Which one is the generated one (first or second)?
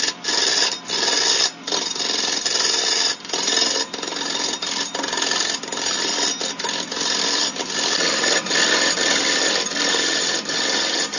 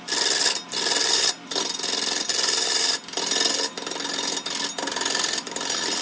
first